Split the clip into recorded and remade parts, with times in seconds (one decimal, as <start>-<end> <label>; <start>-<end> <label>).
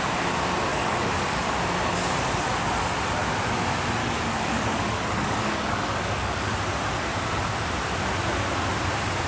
0.0-0.7 recorded; 0.7-1.6 remade; 1.6-4.0 recorded; 4.0-6.6 remade; 6.6-9.3 recorded